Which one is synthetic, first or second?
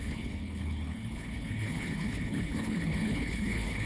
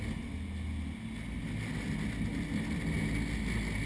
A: first